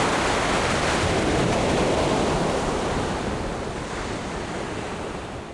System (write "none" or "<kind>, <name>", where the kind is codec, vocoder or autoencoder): none